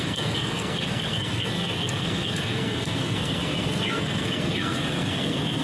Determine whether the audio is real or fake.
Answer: fake